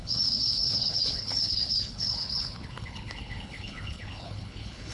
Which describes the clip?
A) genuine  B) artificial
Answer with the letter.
B